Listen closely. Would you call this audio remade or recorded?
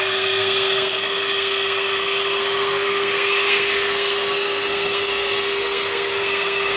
remade